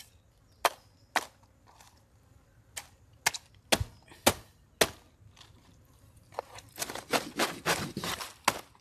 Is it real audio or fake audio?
real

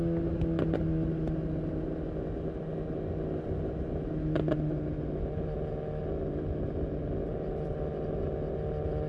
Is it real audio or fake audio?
real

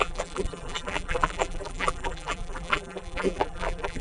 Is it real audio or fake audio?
fake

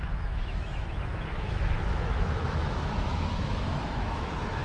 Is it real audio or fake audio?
fake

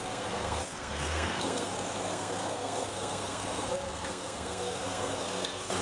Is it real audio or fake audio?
fake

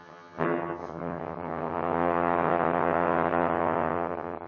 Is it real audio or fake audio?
fake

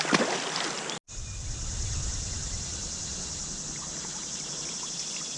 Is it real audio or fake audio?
real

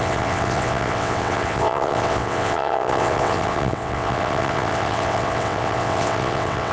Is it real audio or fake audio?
fake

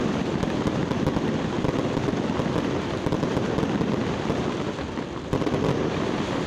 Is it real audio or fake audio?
fake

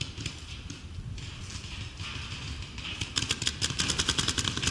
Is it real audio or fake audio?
real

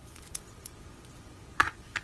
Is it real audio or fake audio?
fake